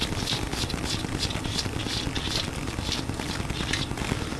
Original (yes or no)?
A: yes